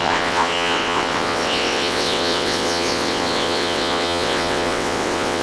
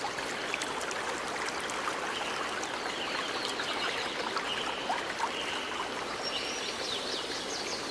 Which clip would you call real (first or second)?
second